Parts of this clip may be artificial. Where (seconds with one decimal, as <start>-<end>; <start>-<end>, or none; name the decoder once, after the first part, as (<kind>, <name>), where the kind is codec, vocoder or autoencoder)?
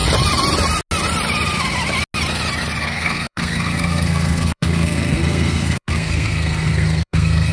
2.8-7.5 (codec, SNAC)